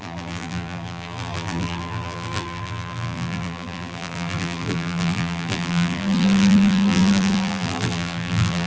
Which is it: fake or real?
fake